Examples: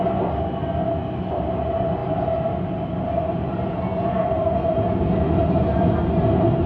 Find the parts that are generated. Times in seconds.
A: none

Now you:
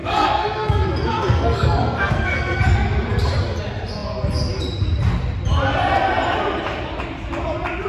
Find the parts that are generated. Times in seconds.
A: 0.0-2.6 (codec, SNAC)